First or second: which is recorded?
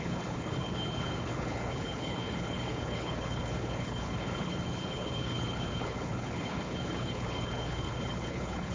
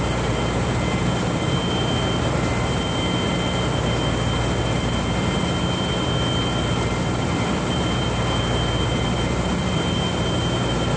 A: second